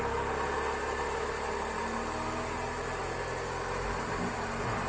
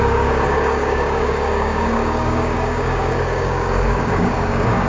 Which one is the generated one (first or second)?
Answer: second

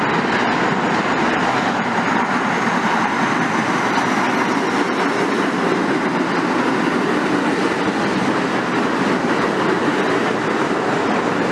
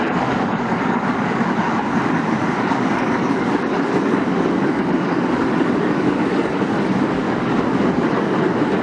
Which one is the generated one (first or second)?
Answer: second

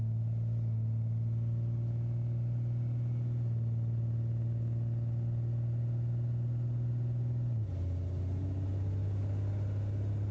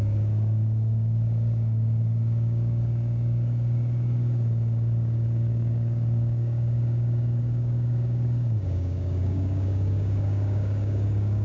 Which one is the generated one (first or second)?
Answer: second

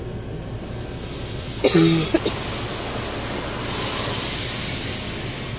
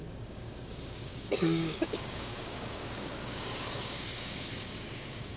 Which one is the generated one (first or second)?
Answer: second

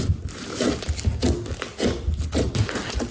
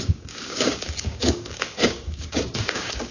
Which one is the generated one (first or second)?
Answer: second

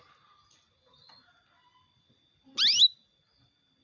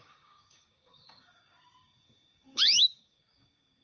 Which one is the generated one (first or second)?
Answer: second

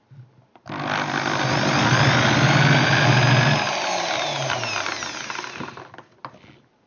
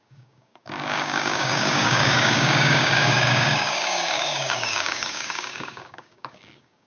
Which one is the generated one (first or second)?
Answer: second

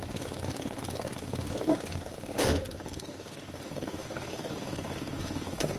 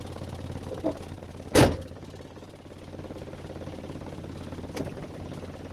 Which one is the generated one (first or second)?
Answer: first